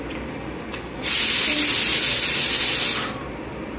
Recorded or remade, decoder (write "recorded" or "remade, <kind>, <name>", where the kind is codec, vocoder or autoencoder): recorded